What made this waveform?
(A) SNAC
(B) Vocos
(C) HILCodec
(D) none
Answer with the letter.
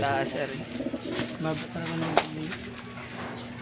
D